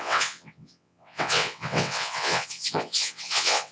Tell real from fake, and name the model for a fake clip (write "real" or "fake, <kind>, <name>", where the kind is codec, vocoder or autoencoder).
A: fake, vocoder, WaveNeXt